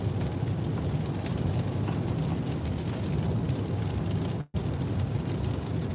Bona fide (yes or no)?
yes